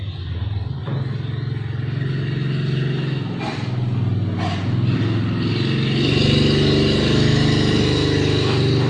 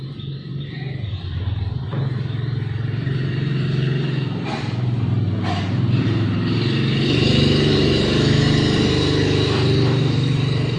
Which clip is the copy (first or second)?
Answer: second